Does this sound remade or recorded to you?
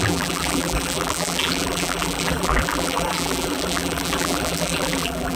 remade